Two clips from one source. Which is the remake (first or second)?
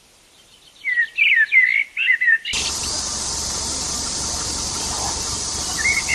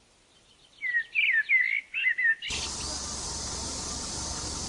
first